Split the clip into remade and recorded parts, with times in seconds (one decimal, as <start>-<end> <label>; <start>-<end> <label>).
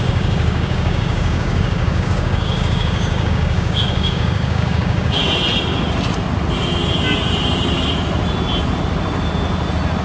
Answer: 0.0-5.2 remade; 5.2-10.0 recorded